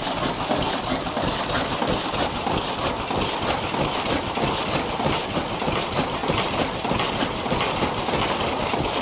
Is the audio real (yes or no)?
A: yes